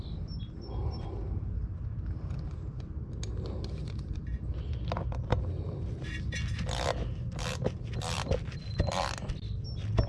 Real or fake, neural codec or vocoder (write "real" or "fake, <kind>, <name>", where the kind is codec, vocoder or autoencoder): real